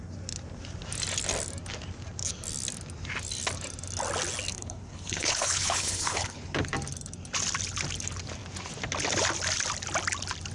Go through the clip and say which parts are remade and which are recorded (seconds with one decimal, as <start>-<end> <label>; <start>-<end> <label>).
0.0-4.5 recorded; 4.5-6.6 remade; 6.6-10.5 recorded